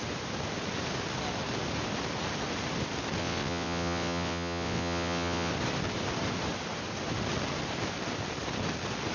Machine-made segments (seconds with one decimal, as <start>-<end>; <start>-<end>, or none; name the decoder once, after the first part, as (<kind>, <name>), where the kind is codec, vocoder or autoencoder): 3.2-5.5 (vocoder, WaveNeXt)